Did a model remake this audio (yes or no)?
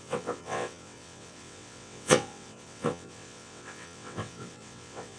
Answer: yes